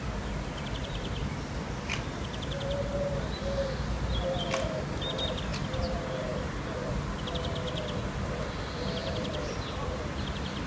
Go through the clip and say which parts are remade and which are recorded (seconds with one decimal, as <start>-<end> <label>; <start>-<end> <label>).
0.0-9.0 recorded; 9.0-9.6 remade; 9.6-10.7 recorded